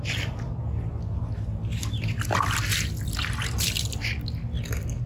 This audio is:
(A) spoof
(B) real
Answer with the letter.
B